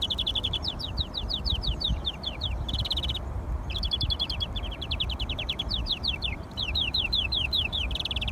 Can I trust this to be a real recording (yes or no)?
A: no